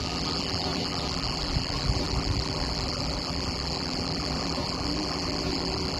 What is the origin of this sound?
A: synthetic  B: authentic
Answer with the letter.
A